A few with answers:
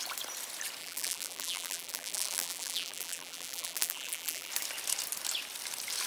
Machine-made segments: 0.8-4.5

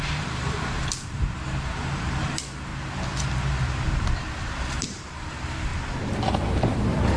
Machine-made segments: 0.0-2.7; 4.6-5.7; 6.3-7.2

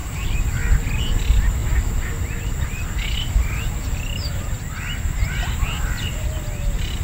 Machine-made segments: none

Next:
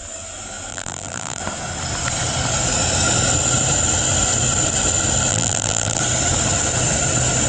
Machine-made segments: 0.7-1.4; 5.3-6.0